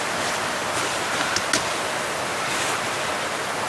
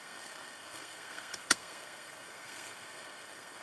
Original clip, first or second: first